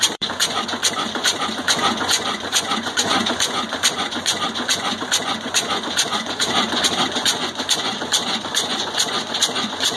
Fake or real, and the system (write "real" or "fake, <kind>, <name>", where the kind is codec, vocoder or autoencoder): fake, vocoder, Vocos